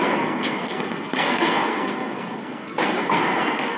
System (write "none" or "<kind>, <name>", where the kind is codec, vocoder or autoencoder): codec, SNAC